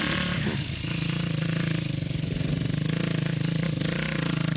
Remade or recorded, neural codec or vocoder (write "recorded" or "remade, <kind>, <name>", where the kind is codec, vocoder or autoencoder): recorded